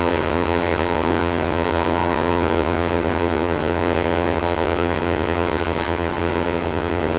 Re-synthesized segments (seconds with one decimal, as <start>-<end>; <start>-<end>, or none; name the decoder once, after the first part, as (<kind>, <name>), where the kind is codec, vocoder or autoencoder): 0.0-7.2 (vocoder, HiFi-GAN)

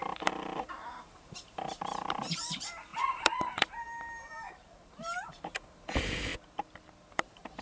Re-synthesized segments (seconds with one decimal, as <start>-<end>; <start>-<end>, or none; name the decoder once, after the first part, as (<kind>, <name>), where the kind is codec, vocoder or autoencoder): 0.0-6.3 (vocoder, BigVGAN v2); 7.1-7.6

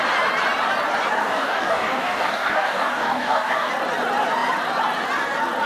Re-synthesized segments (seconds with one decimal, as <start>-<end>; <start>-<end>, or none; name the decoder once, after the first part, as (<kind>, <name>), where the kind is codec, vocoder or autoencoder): 1.2-3.7 (codec, DAC)

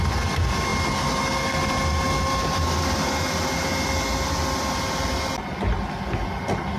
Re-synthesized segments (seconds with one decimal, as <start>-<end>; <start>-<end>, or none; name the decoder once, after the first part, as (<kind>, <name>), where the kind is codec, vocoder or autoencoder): none

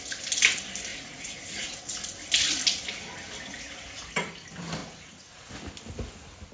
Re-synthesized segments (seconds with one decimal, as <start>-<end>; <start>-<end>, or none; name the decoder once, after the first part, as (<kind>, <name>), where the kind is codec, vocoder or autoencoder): 0.9-1.8 (vocoder, Vocos); 4.8-5.5

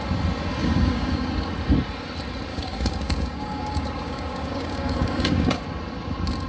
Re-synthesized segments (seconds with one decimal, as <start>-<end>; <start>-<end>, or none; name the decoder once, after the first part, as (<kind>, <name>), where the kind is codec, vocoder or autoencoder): 0.6-1.3 (codec, DAC); 2.5-5.6